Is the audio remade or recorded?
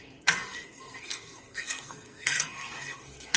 remade